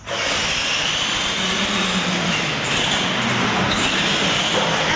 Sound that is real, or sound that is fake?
real